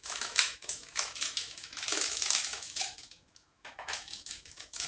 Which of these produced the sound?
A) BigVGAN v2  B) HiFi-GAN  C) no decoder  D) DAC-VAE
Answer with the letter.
D